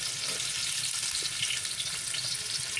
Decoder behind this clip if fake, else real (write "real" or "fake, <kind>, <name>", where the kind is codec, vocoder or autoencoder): real